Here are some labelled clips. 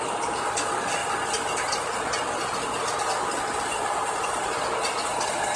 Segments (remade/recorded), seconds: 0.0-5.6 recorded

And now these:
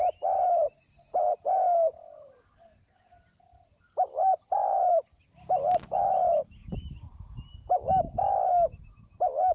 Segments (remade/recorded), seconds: 0.0-3.7 recorded; 3.7-5.2 remade; 5.2-6.6 recorded; 6.6-7.9 remade; 7.9-9.5 recorded

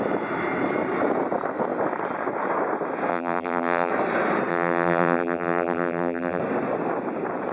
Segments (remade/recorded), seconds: 0.0-3.1 recorded; 3.1-3.9 remade; 3.9-4.5 recorded; 4.5-6.4 remade; 6.4-7.5 recorded